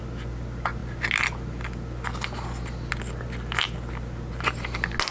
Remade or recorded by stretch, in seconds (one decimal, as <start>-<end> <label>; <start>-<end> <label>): 0.0-5.1 recorded